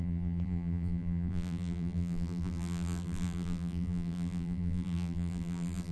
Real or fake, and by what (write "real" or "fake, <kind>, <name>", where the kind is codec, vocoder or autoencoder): fake, vocoder, BigVGAN v2